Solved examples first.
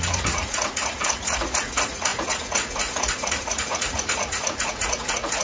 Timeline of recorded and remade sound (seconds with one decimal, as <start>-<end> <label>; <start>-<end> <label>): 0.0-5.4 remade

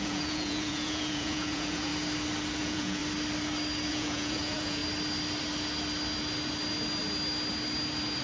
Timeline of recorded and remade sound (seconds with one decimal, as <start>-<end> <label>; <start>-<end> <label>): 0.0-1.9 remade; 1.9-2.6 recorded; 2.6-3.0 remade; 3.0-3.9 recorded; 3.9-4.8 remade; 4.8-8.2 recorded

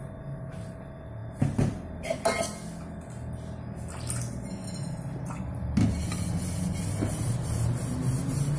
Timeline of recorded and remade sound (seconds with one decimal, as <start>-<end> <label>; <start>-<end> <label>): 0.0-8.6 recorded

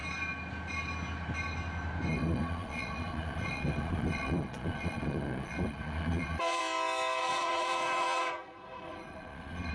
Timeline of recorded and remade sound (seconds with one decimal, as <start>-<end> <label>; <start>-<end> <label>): 0.0-2.1 recorded; 2.1-6.6 remade; 6.6-7.2 recorded; 7.2-9.7 remade